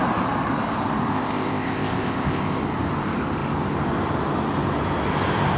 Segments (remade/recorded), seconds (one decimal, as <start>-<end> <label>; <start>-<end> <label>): 0.0-1.1 recorded; 1.1-2.6 remade; 2.6-5.6 recorded